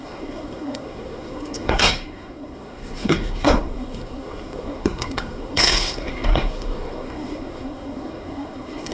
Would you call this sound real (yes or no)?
no